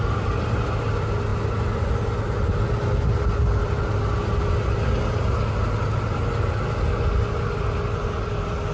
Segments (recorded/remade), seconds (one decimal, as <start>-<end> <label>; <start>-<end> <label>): 0.0-8.7 recorded